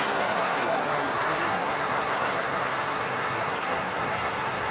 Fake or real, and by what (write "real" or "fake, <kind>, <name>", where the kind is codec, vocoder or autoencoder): fake, codec, SNAC